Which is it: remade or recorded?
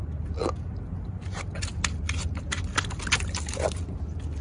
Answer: recorded